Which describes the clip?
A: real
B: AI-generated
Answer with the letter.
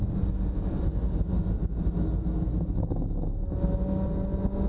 A